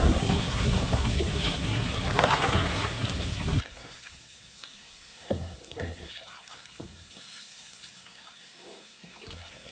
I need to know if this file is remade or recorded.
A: remade